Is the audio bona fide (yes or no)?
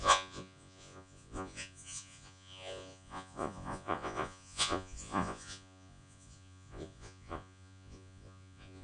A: no